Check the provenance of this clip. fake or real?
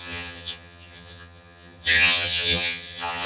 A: fake